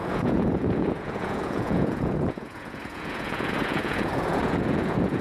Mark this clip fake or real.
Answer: fake